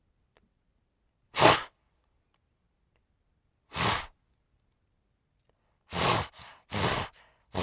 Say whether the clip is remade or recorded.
recorded